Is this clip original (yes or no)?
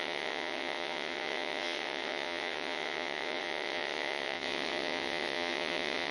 no